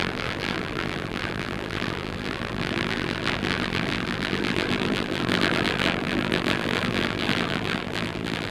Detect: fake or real fake